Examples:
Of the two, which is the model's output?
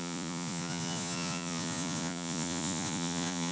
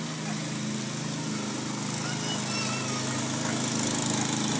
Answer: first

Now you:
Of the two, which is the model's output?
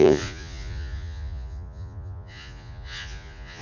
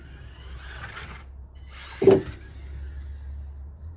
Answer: first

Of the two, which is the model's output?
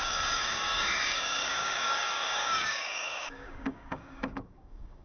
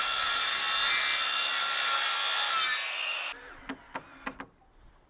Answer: first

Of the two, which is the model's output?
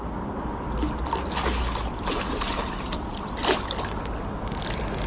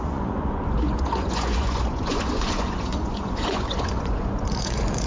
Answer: second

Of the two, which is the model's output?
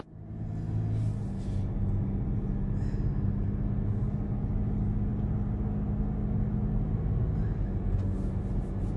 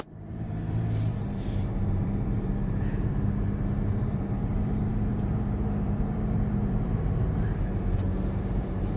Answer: second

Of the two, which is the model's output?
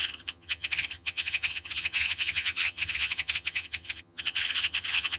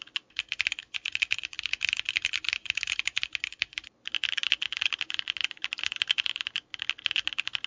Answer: first